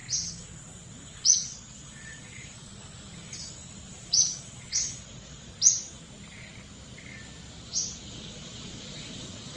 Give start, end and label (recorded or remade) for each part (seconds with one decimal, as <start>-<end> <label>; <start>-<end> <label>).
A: 0.0-1.2 recorded; 1.2-2.7 remade; 2.7-3.9 recorded; 3.9-5.5 remade; 5.5-8.1 recorded; 8.1-9.6 remade